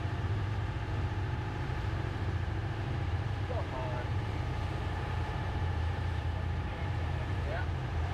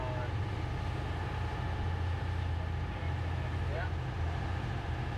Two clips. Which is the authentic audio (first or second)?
second